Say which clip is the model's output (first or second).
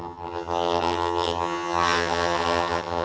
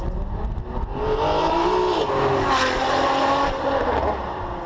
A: first